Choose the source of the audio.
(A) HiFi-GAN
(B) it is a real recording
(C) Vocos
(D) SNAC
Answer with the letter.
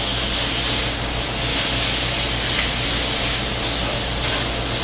B